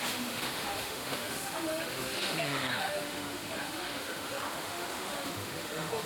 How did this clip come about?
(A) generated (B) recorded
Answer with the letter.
A